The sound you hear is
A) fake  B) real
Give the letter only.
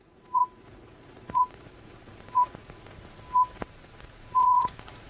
A